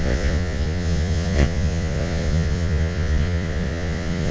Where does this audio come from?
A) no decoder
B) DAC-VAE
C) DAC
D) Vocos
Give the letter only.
D